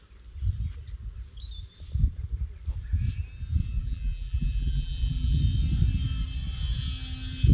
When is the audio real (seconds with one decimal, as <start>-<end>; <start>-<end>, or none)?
0.0-3.8; 5.4-7.5